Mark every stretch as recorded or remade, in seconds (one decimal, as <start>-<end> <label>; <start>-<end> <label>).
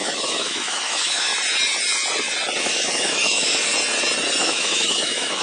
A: 0.0-1.3 remade; 1.3-2.6 recorded; 2.6-3.7 remade; 3.7-4.4 recorded; 4.4-5.4 remade